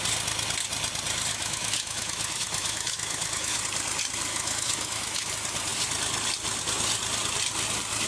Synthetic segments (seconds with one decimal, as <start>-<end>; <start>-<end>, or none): 1.3-3.6; 4.3-5.3